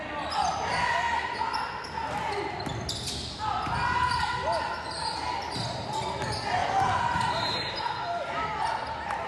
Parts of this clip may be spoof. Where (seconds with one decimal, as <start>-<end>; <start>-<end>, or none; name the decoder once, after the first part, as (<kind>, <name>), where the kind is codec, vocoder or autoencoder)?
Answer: 6.6-7.8 (vocoder, BigVGAN v2)